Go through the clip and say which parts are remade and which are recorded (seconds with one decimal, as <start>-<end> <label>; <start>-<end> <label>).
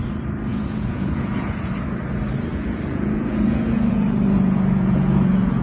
0.0-0.5 recorded; 0.5-1.7 remade; 1.7-2.5 recorded; 2.5-5.6 remade